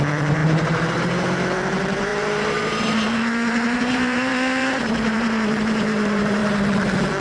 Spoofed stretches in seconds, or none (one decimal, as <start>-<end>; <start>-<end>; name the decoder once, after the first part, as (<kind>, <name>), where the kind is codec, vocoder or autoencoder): 0.0-6.4 (vocoder, BigVGAN v2)